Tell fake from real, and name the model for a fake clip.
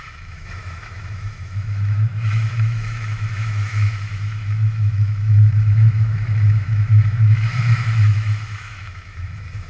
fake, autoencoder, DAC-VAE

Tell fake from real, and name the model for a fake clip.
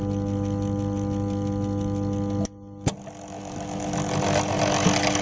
real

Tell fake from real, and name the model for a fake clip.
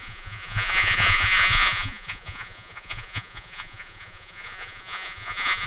fake, vocoder, Vocos